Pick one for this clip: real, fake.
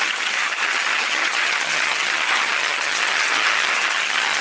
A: fake